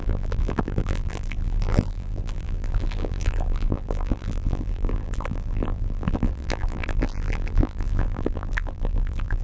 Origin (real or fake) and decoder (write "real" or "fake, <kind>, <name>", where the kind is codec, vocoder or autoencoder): fake, vocoder, BigVGAN v2